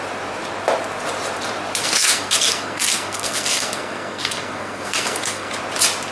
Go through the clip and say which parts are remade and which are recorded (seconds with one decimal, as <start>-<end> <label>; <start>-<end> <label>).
0.0-1.8 recorded; 1.8-5.5 remade; 5.5-6.1 recorded